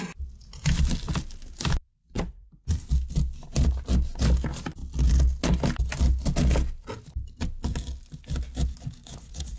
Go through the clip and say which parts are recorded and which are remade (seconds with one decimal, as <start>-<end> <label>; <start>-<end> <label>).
0.0-2.3 recorded; 2.3-2.8 remade; 2.8-9.0 recorded; 9.0-9.6 remade